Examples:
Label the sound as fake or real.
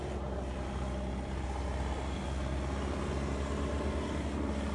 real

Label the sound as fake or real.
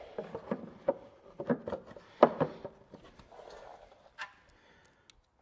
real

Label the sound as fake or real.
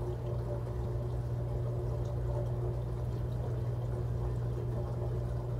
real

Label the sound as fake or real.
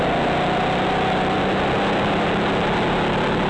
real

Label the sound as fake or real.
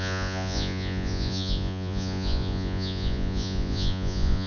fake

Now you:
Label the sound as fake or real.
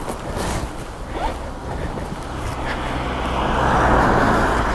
real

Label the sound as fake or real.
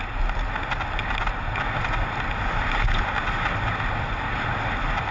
real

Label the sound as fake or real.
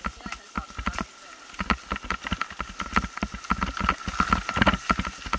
real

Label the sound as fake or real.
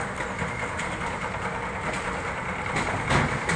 real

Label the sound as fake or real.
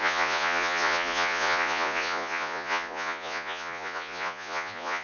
fake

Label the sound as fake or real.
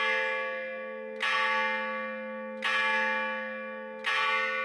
real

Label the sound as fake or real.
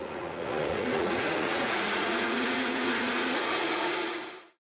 fake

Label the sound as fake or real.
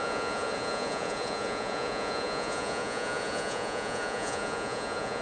fake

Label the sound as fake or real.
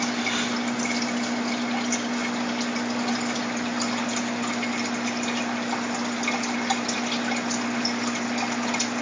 real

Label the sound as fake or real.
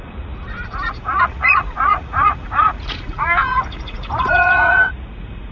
fake